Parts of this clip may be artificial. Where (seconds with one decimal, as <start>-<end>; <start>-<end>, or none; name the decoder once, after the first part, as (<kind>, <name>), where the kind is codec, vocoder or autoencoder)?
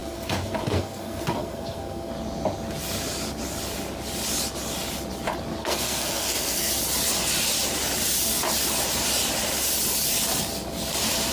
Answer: 0.0-2.1 (codec, SNAC); 5.6-6.7